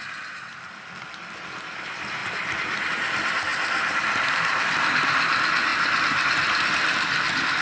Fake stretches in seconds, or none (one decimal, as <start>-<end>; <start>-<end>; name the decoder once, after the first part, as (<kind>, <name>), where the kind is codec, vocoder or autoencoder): 0.0-3.5 (vocoder, BigVGAN v2); 4.0-5.7; 6.7-7.6